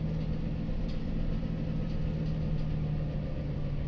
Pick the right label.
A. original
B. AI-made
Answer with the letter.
A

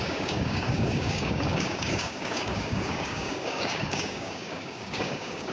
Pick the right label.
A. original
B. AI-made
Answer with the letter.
B